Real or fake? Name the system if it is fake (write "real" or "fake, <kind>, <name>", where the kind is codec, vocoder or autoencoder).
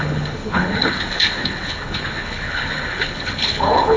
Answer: fake, codec, HILCodec